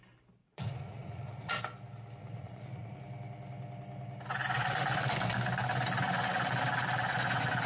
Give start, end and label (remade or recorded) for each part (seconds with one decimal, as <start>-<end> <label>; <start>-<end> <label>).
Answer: 0.0-0.4 recorded; 0.4-1.6 remade; 1.6-2.2 recorded; 2.2-3.0 remade; 3.0-7.7 recorded